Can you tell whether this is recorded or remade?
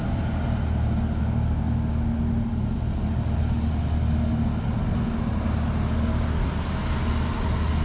recorded